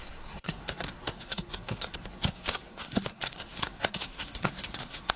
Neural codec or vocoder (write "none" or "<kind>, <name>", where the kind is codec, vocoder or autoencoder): codec, SNAC